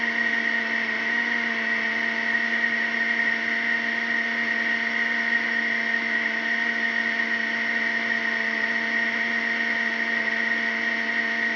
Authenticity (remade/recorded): recorded